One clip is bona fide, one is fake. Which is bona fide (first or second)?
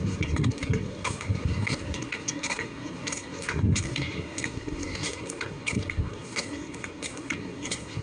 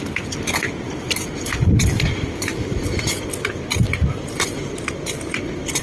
second